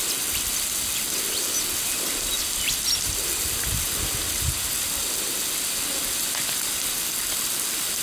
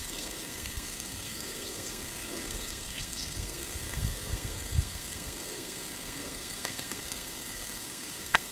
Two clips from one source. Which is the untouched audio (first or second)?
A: first